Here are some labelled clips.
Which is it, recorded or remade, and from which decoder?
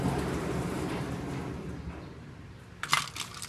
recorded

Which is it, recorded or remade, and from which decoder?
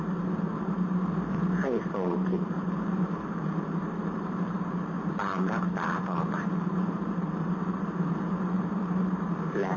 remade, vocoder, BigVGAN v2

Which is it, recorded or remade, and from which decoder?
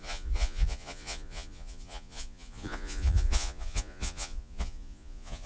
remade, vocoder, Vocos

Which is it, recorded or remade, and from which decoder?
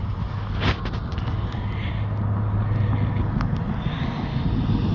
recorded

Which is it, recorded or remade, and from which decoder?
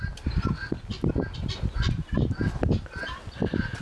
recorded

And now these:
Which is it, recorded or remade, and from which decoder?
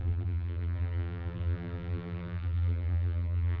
remade, vocoder, BigVGAN v2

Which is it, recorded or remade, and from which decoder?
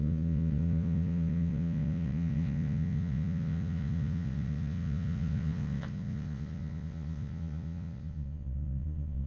remade, vocoder, Vocos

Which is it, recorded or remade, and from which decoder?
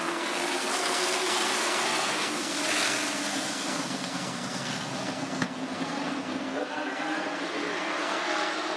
remade, codec, SNAC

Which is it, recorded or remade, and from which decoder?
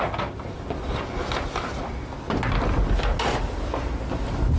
recorded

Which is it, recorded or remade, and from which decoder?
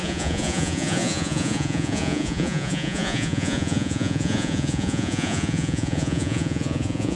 remade, vocoder, Vocos